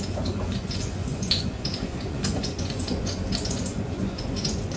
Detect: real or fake fake